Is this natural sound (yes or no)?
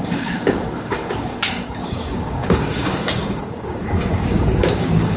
no